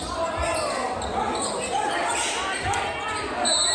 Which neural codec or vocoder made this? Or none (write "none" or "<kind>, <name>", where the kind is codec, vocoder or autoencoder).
none